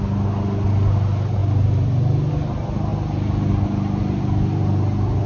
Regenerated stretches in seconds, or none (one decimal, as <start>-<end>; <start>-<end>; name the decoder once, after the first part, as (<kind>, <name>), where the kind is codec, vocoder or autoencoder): none